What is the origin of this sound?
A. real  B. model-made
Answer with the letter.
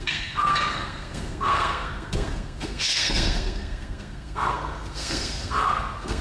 B